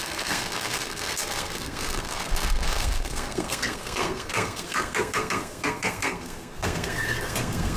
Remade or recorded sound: remade